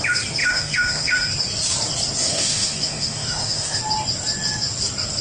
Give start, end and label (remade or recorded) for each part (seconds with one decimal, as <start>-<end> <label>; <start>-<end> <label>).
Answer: 0.0-0.4 recorded; 0.4-1.3 remade; 1.3-2.2 recorded; 2.2-3.8 remade; 3.8-5.2 recorded